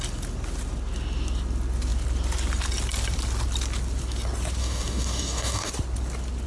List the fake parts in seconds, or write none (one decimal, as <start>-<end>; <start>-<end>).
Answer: 4.6-5.7